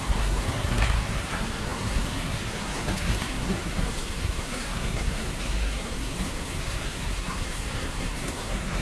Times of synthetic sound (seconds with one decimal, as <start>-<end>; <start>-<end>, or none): 0.0-8.8